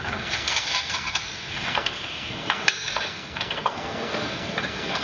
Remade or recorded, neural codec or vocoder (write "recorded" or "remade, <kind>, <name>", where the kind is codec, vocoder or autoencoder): remade, codec, SNAC